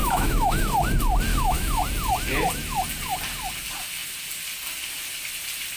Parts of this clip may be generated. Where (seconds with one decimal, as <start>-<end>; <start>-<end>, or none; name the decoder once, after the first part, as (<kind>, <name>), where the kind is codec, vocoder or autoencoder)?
0.0-0.6 (autoencoder, DAC-VAE); 1.3-1.8